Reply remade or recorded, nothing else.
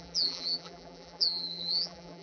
remade